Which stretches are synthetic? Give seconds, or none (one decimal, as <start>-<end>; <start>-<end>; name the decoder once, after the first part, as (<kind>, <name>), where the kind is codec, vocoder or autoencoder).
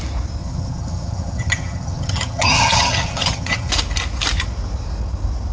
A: 0.4-3.7 (vocoder, HiFi-GAN)